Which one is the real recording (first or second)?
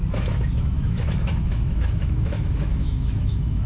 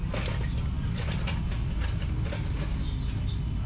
second